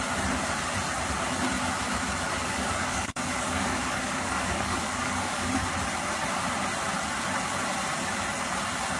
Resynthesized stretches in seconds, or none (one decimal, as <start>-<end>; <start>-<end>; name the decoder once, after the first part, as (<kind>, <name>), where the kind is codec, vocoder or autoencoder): 2.4-5.5 (codec, DAC)